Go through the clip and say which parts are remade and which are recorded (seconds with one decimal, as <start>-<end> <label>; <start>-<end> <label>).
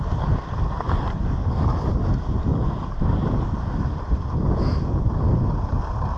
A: 0.0-6.2 recorded